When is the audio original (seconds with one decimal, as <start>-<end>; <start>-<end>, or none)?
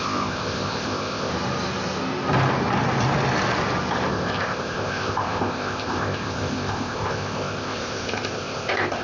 1.3-4.1